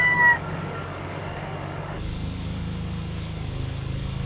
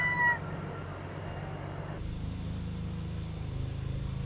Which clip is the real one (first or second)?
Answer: second